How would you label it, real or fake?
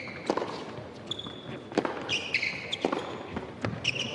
real